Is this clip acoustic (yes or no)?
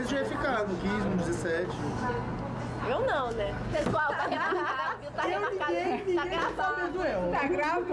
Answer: yes